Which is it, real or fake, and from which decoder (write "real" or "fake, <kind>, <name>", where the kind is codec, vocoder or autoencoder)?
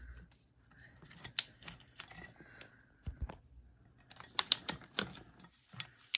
fake, vocoder, BigVGAN v2